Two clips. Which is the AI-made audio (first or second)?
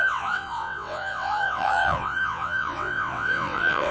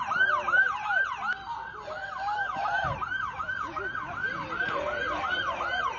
first